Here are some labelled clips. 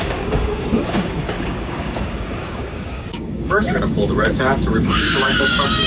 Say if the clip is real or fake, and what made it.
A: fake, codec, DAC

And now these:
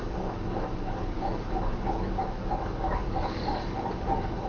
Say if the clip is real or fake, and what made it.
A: fake, codec, DAC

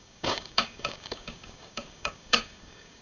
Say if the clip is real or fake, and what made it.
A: fake, codec, DAC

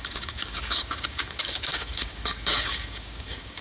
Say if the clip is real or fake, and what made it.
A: fake, codec, DAC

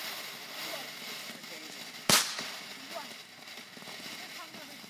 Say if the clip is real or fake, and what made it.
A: real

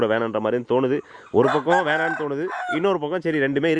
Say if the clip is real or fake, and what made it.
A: real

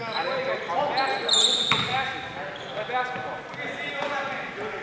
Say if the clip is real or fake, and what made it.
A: real